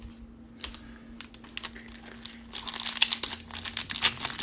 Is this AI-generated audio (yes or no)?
no